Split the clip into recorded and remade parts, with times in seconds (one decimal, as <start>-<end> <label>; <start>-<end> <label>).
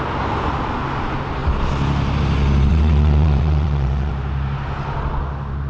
0.0-2.7 recorded; 2.7-4.1 remade; 4.1-5.7 recorded